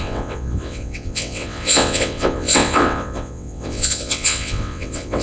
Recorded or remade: remade